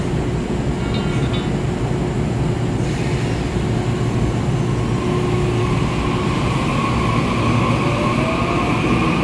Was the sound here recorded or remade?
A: recorded